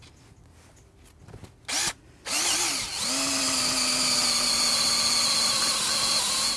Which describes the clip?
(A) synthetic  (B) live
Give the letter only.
B